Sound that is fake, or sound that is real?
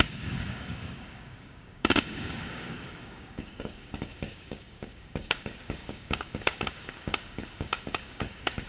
fake